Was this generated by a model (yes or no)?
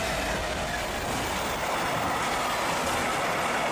no